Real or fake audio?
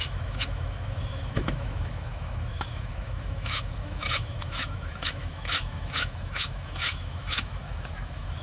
fake